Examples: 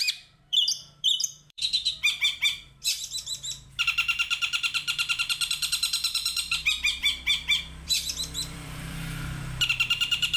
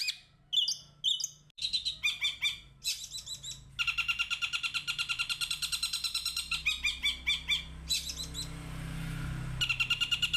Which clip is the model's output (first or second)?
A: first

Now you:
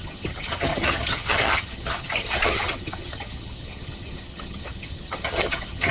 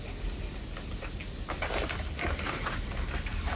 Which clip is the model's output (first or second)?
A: first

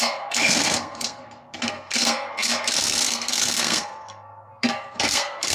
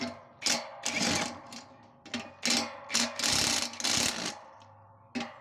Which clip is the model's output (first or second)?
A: first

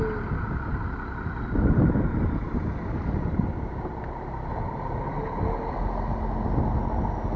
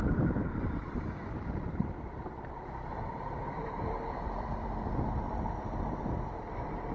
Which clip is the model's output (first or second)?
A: second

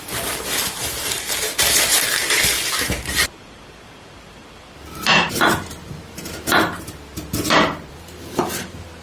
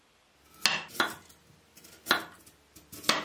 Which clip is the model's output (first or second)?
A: first